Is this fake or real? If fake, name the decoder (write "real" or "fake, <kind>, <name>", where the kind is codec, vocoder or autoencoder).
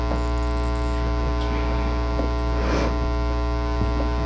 real